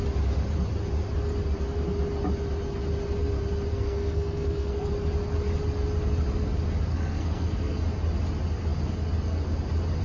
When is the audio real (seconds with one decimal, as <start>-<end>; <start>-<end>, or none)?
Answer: 0.0-3.7; 4.9-6.9; 7.8-10.0